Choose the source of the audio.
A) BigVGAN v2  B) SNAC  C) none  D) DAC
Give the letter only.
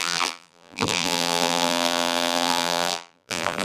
A